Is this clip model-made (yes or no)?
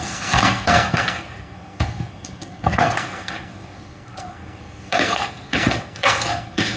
yes